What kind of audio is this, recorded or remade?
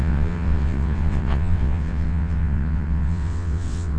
remade